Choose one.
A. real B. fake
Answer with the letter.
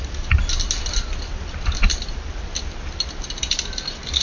A